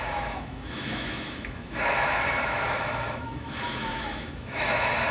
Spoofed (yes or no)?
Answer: yes